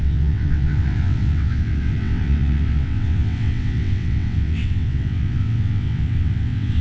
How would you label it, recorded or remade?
remade